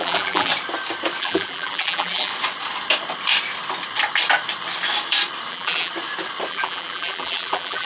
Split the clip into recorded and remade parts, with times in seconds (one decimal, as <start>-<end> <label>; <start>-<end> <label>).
0.0-0.5 remade; 0.5-1.2 recorded; 1.2-2.3 remade; 2.3-5.5 recorded; 5.5-5.9 remade; 5.9-6.5 recorded; 6.5-7.9 remade